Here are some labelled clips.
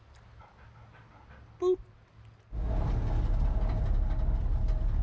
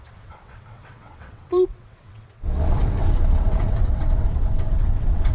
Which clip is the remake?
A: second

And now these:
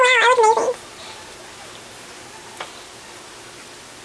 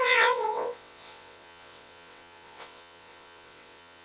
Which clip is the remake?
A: second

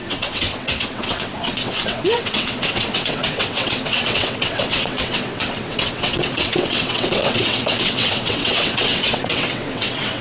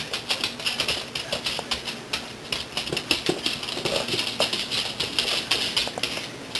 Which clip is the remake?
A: first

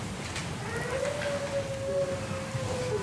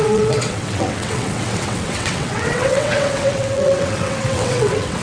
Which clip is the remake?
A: second